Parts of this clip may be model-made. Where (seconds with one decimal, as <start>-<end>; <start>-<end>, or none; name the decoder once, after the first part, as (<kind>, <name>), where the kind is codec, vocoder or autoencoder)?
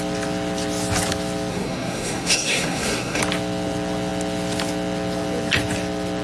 1.5-3.2 (codec, SNAC)